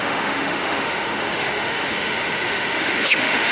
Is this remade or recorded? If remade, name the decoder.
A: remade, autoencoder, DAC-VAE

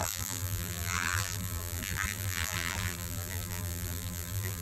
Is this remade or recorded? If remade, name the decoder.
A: remade, vocoder, BigVGAN v2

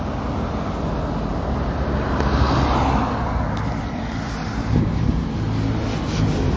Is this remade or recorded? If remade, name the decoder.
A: recorded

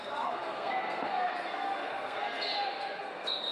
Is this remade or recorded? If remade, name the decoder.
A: remade, codec, SNAC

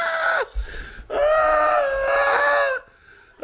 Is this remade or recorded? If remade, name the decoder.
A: recorded